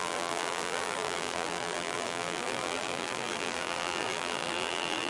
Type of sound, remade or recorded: remade